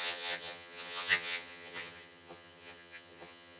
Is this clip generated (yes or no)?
yes